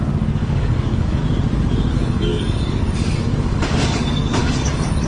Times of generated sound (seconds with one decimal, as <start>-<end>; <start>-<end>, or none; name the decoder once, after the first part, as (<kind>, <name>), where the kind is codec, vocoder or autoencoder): 0.0-1.2 (codec, DAC); 1.9-5.1